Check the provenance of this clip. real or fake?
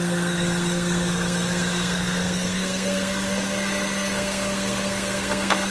fake